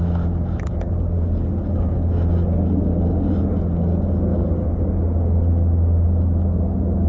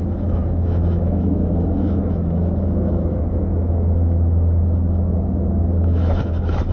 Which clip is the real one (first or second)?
first